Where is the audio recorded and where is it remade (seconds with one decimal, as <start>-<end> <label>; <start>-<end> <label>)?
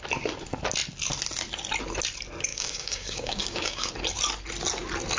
0.0-2.5 recorded; 2.5-3.9 remade; 3.9-5.2 recorded